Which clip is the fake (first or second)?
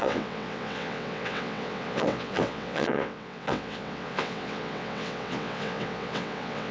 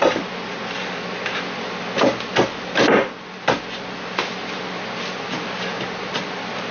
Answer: first